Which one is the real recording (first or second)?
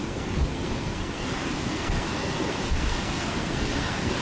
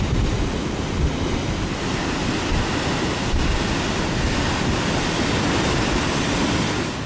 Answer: second